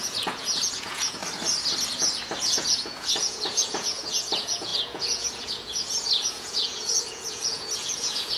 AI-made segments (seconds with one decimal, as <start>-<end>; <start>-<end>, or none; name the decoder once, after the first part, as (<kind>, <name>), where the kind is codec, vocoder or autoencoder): 0.0-1.2 (vocoder, Vocos); 2.4-8.4